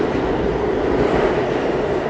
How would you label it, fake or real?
real